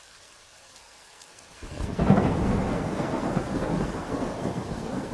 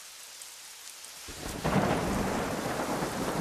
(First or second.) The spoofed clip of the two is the first